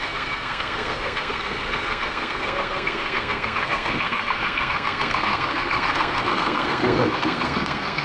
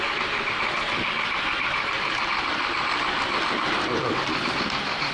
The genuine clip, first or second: second